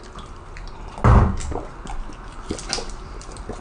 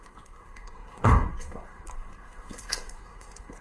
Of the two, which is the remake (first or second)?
second